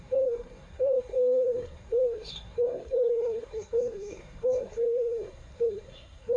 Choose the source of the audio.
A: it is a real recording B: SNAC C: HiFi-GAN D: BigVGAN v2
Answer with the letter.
B